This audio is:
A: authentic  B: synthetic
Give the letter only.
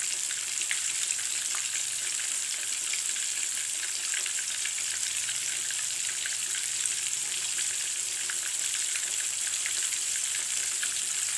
B